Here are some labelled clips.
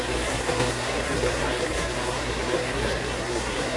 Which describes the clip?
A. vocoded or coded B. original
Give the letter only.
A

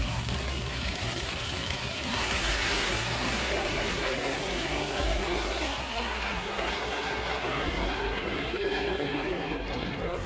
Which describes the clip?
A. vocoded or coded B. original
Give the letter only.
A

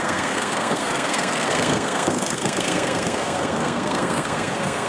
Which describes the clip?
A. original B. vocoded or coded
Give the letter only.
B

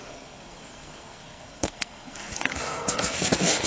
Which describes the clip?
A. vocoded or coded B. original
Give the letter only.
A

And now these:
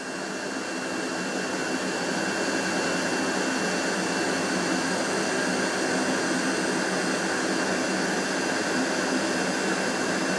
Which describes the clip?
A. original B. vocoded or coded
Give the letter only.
A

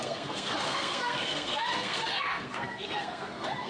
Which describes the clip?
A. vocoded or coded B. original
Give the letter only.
A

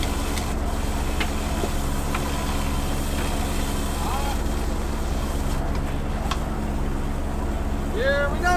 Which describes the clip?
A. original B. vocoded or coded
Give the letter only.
A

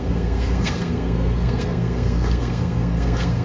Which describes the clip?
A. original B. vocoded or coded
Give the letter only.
B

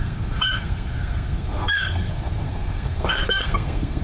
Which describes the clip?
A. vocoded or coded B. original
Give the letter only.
A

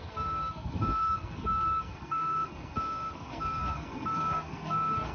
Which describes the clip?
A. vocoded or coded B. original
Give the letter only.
A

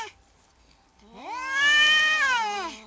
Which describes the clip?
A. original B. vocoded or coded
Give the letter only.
A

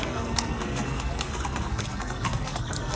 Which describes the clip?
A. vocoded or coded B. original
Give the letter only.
A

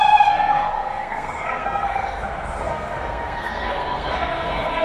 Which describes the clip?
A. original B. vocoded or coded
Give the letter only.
B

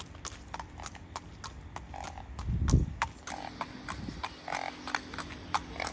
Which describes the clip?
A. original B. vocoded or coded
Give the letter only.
A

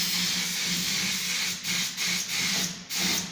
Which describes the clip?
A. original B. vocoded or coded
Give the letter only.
A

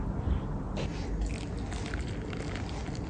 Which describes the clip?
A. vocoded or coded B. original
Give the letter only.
B